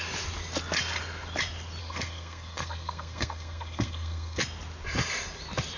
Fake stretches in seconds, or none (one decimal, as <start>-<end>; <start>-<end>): 1.8-4.4